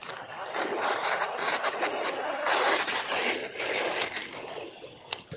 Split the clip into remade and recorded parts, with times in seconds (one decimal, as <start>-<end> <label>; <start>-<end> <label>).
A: 0.0-3.2 remade; 3.2-5.4 recorded